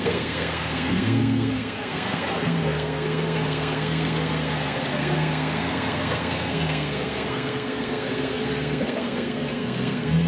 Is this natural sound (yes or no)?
no